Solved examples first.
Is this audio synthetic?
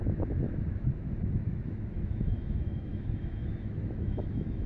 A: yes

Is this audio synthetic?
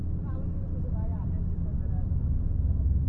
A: no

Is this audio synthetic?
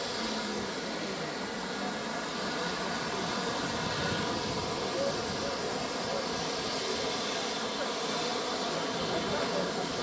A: no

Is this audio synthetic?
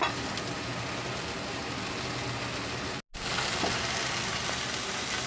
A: no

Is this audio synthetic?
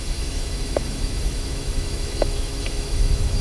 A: yes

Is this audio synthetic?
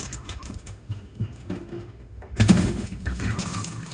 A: yes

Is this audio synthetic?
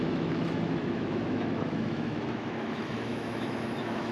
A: yes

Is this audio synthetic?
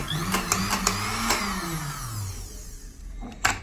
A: no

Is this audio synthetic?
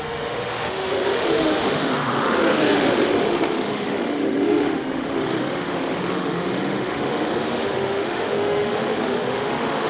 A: yes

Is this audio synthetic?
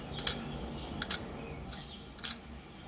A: no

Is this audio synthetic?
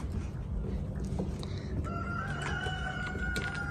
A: no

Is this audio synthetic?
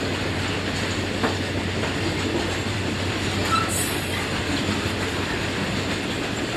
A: no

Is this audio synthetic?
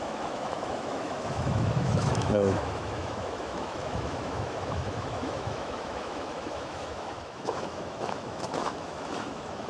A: yes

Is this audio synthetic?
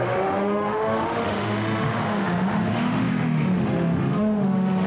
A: yes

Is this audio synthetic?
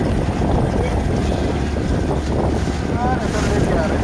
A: no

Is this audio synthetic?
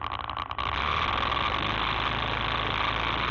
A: no